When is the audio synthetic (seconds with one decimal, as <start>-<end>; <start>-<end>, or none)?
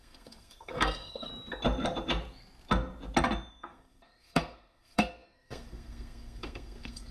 0.0-1.3; 3.5-7.1